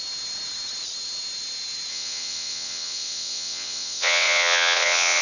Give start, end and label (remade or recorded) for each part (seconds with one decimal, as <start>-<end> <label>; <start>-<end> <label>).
0.0-1.9 recorded; 1.9-5.2 remade